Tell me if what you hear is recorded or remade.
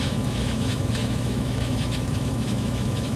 remade